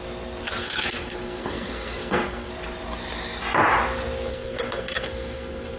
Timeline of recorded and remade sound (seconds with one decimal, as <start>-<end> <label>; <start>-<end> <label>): 0.0-0.6 recorded; 0.6-2.5 remade; 2.5-4.3 recorded; 4.3-5.8 remade